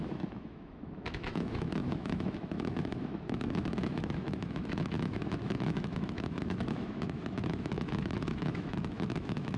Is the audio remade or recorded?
remade